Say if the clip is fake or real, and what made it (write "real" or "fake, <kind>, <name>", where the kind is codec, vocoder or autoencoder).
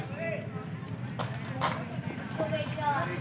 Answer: real